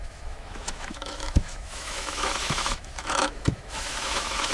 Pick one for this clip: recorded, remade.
remade